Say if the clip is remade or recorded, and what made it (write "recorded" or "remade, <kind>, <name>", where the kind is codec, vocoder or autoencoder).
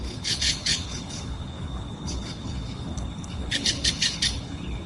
remade, codec, HILCodec